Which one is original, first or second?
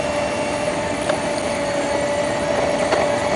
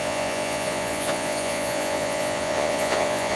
first